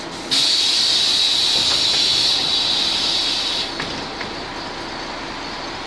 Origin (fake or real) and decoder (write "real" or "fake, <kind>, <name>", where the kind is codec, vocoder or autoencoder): real